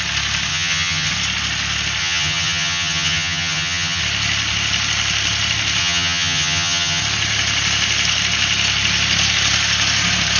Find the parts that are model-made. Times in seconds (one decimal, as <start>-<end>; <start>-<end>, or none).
0.5-1.1; 2.0-4.0; 5.8-7.0